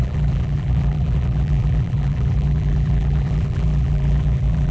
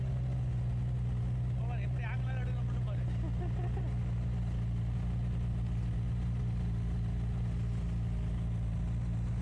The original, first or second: second